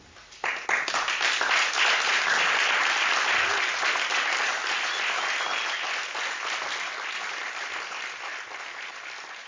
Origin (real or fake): real